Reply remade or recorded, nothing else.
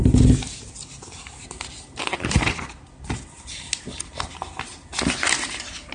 recorded